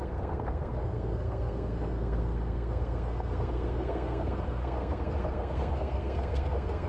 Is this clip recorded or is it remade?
remade